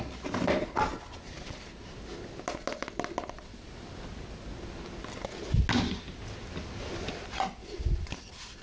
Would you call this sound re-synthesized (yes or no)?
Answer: no